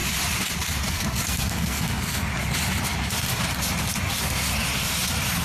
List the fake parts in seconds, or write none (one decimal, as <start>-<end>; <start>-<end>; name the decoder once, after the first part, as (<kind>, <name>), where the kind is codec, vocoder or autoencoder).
0.9-2.3 (codec, SNAC)